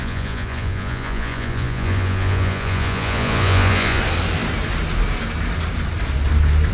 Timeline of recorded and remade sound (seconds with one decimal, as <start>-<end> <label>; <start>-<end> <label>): 0.0-4.0 remade; 4.0-6.7 recorded